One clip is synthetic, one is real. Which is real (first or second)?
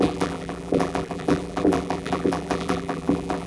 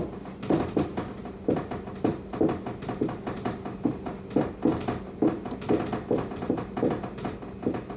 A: second